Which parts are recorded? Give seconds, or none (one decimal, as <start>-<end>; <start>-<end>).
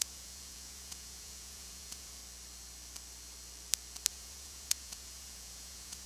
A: 2.2-4.1